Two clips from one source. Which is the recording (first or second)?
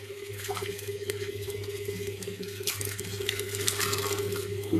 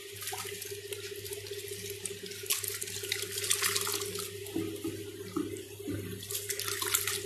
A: second